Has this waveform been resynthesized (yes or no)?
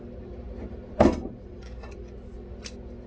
no